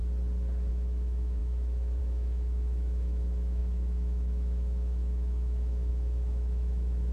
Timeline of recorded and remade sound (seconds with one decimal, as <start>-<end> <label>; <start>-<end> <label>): 0.0-0.7 recorded; 0.7-7.1 remade